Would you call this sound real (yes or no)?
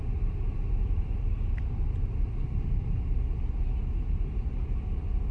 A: yes